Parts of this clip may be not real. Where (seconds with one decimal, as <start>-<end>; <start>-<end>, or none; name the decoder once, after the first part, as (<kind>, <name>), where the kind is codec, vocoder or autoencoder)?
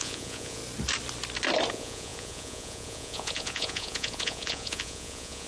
0.0-0.6 (vocoder, Vocos); 1.7-5.5